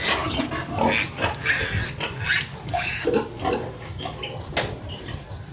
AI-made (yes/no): no